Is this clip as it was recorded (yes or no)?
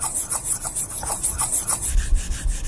yes